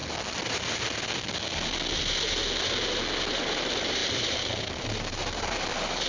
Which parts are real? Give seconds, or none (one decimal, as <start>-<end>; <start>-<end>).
0.0-3.3

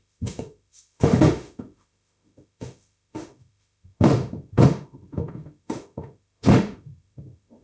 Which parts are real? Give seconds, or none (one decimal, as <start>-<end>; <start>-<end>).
none

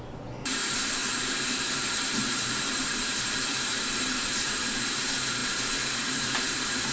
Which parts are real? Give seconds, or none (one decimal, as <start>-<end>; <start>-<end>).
none

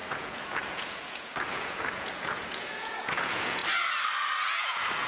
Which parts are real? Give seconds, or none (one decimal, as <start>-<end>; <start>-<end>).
3.6-4.4

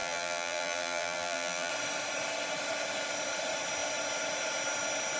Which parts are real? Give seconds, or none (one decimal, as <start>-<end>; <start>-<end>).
1.7-5.2